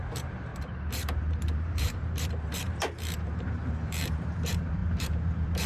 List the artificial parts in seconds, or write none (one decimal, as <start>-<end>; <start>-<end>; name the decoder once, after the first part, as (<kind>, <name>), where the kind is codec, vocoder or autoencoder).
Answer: 0.0-5.7 (vocoder, BigVGAN v2)